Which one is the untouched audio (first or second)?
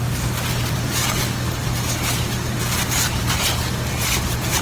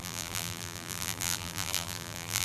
first